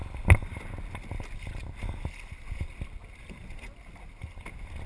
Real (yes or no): yes